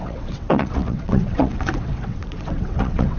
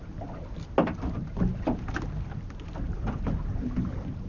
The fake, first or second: first